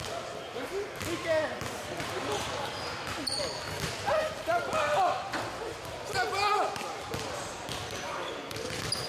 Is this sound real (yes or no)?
yes